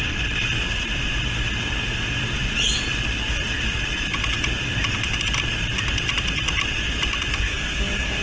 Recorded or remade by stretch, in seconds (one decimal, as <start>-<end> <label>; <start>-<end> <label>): 0.0-7.3 recorded; 7.3-8.2 remade